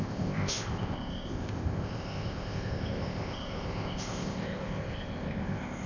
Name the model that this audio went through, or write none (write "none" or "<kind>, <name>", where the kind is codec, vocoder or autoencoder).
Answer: codec, ZipCodec